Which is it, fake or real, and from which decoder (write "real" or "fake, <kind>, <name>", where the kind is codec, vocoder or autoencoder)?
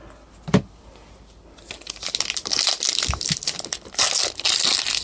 real